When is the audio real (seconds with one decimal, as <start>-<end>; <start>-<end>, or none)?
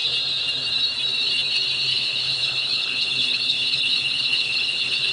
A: 0.0-1.9